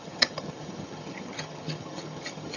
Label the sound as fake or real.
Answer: fake